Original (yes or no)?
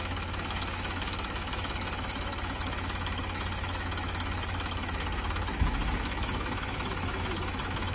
no